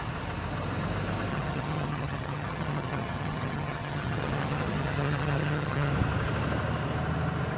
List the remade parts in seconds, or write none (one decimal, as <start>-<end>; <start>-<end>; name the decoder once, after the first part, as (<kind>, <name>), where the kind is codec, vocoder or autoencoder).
1.3-5.9 (vocoder, HiFi-GAN)